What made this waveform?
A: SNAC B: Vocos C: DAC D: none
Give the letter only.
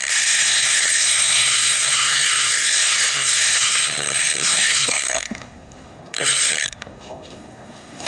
A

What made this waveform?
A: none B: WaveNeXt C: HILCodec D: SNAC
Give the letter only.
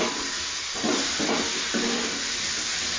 A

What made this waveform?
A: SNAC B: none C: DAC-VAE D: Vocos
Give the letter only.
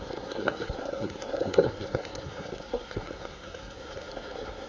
A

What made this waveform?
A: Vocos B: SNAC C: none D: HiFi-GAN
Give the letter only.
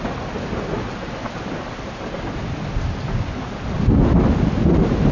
C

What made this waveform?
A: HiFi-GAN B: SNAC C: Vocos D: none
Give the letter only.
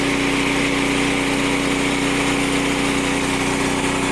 D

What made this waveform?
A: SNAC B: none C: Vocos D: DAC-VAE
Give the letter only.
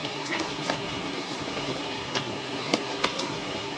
A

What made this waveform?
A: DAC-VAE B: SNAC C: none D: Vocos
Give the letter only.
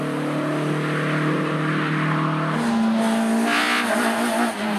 C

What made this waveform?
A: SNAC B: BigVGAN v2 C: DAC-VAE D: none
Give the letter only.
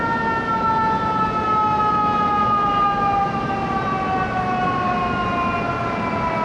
D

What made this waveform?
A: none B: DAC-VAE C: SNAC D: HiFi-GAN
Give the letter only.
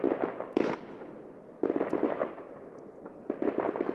A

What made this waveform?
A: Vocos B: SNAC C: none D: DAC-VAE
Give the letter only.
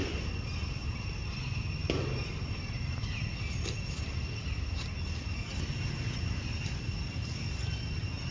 C